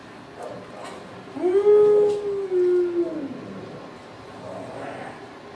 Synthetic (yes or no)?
no